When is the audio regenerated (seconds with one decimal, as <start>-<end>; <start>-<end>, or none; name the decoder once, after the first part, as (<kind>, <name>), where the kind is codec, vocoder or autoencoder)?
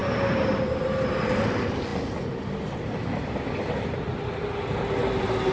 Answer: none